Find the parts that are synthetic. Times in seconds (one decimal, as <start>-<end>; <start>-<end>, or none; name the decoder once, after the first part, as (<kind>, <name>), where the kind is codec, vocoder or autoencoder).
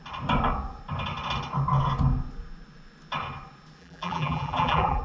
3.8-5.0 (vocoder, BigVGAN v2)